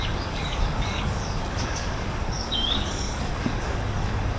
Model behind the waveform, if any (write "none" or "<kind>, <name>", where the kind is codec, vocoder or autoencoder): codec, DAC